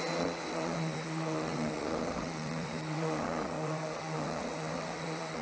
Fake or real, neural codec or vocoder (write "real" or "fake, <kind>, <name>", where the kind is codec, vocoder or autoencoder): fake, vocoder, WaveNeXt